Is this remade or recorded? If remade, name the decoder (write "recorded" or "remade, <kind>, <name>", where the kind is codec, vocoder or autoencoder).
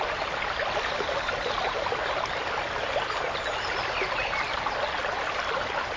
recorded